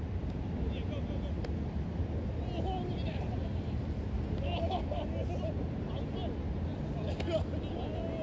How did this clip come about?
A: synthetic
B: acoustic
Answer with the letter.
B